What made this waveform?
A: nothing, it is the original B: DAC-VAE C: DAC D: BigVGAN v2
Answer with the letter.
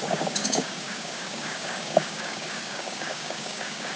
C